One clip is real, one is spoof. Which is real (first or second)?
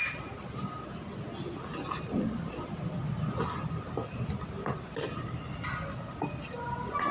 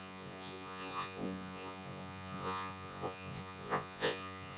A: first